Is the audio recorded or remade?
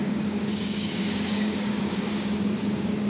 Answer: remade